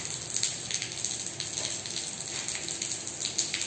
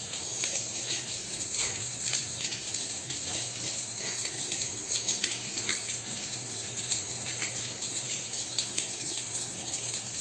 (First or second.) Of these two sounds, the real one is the first